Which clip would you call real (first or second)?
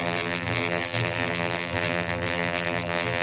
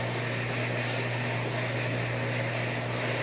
second